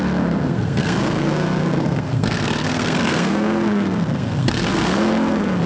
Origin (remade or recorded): remade